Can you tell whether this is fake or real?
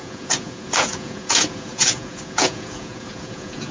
fake